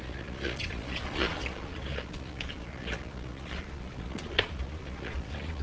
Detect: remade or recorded remade